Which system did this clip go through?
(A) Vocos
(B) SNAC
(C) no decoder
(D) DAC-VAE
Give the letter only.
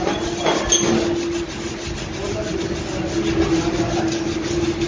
C